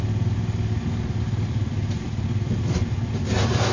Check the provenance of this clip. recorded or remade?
recorded